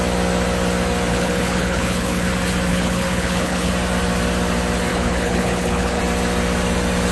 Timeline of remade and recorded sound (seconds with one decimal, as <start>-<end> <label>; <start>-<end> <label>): 0.0-1.1 recorded; 1.1-2.3 remade; 2.3-2.7 recorded; 2.7-3.7 remade; 3.7-4.9 recorded; 4.9-6.0 remade; 6.0-7.1 recorded

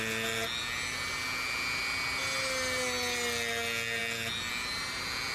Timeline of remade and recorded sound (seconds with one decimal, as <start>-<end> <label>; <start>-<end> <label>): 0.0-5.3 recorded

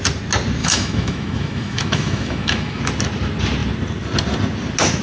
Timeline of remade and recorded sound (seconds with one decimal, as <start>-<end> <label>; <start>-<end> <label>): 0.0-0.6 recorded; 0.6-2.8 remade; 2.8-5.0 recorded

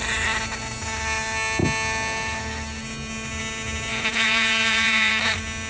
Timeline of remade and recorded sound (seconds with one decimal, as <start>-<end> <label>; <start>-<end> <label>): 0.0-3.9 recorded; 3.9-5.1 remade; 5.1-5.7 recorded

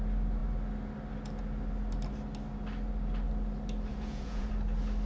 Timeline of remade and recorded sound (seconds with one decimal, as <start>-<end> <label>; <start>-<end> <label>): 0.0-3.9 recorded; 3.9-4.5 remade; 4.5-5.1 recorded

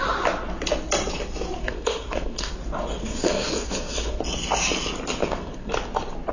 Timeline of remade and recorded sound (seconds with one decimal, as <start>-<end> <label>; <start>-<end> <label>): 0.0-1.6 recorded; 1.6-2.5 remade; 2.5-3.0 recorded; 3.0-4.2 remade; 4.2-5.2 recorded; 5.2-5.7 remade; 5.7-6.3 recorded

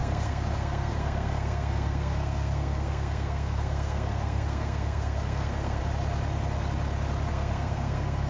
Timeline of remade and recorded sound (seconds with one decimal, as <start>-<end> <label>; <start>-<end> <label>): 0.0-5.8 remade; 5.8-7.3 recorded; 7.3-8.3 remade

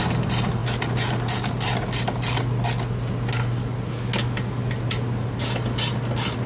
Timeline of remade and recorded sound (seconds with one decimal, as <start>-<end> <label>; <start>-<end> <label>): 0.0-6.5 recorded